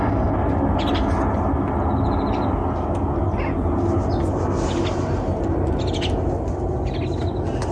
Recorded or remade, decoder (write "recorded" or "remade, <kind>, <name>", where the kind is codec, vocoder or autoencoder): recorded